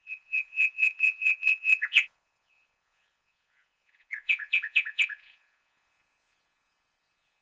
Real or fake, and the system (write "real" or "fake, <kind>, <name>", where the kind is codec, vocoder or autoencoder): fake, vocoder, Vocos